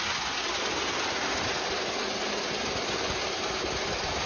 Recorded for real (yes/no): yes